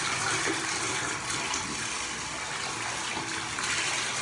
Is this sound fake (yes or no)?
no